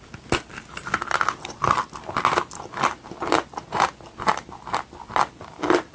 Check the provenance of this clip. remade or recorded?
recorded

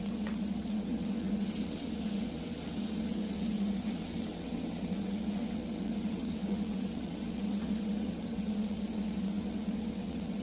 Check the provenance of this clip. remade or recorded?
remade